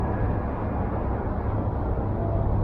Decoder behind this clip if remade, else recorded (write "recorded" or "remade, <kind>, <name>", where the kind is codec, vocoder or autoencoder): recorded